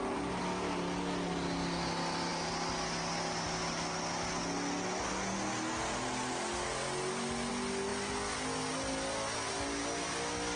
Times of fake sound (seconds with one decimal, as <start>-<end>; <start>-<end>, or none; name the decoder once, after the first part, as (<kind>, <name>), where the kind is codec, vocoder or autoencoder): none